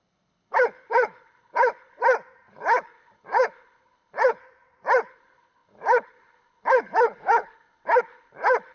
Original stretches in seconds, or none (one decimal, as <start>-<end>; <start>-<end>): 2.0-2.5; 4.4-5.1